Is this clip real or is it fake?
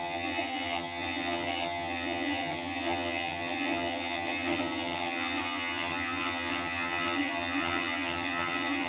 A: fake